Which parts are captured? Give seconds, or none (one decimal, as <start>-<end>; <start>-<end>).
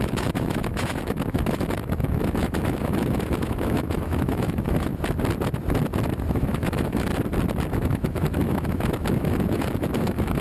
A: 4.9-6.3; 7.1-7.7